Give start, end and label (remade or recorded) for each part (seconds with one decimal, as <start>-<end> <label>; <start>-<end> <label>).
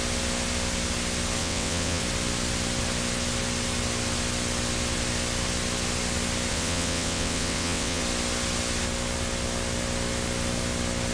0.0-1.4 recorded; 1.4-2.0 remade; 2.0-6.5 recorded; 6.5-8.0 remade; 8.0-11.1 recorded